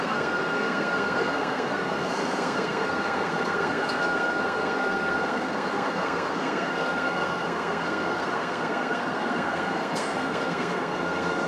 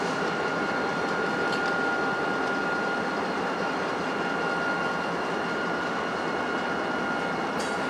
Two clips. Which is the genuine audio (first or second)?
second